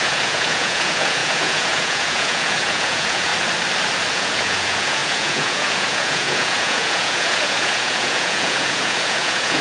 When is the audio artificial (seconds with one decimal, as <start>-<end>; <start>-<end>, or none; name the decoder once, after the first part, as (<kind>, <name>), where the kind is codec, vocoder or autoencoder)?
0.0-3.3 (vocoder, Vocos); 4.1-9.6